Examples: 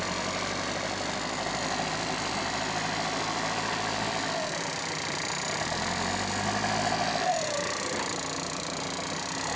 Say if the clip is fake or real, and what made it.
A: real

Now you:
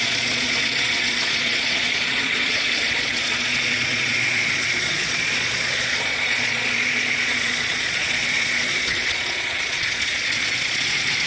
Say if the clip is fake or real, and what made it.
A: fake, vocoder, Vocos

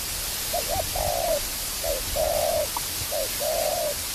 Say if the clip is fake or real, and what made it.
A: real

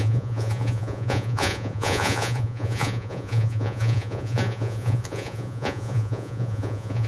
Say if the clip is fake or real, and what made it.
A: fake, vocoder, Vocos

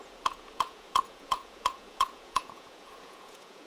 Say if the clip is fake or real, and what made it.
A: fake, vocoder, Vocos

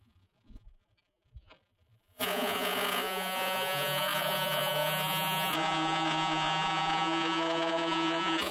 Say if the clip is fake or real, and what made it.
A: fake, vocoder, Vocos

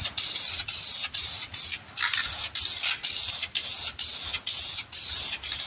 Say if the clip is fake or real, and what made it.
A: real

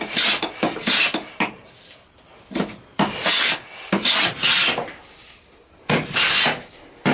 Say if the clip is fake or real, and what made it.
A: real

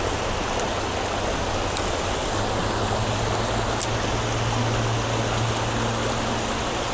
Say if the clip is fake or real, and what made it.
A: real